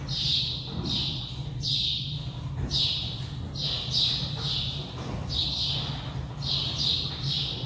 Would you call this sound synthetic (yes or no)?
no